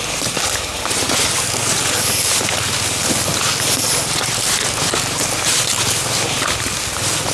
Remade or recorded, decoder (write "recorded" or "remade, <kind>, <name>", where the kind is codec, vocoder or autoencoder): recorded